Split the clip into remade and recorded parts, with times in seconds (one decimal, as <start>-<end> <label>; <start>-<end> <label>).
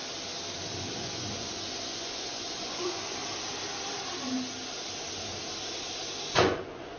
0.0-1.0 recorded; 1.0-3.2 remade; 3.2-6.3 recorded; 6.3-7.0 remade